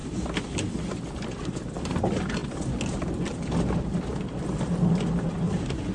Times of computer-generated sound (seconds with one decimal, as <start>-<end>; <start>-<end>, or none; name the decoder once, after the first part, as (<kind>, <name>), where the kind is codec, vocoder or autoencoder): 1.5-2.4 (vocoder, BigVGAN v2); 5.3-5.9